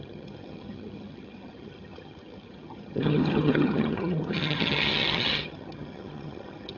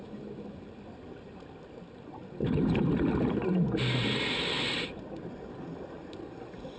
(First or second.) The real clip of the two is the second